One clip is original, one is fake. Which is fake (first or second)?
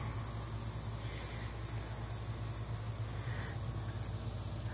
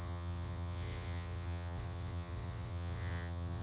second